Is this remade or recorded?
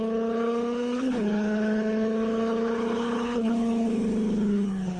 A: remade